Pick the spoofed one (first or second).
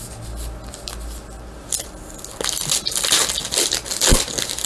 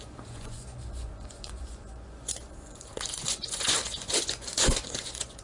second